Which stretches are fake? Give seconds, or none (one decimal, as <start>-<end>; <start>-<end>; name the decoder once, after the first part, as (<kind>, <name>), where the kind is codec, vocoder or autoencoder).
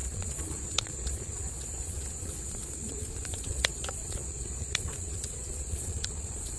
0.0-6.6 (vocoder, Vocos)